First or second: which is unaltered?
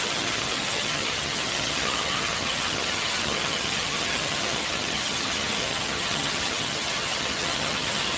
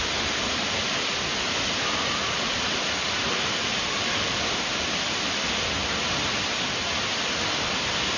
second